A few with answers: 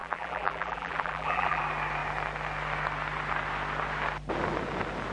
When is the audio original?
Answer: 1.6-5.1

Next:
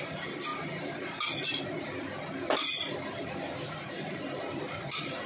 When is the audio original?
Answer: 0.0-0.5; 3.7-5.3

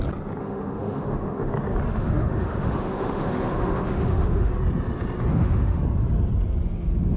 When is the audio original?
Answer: 0.0-0.4; 1.5-2.0; 4.5-5.3; 5.8-7.2

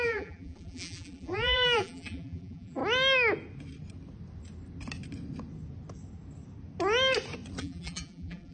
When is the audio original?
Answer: 2.8-7.6

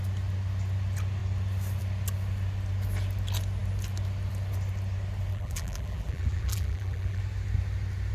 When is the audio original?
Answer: 0.0-5.3; 7.2-8.1

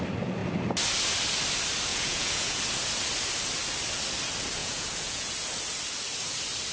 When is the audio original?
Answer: 0.0-1.9; 2.6-4.6; 5.3-6.7